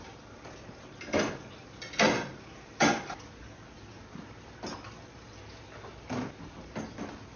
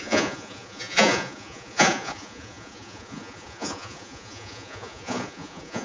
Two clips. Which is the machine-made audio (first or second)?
second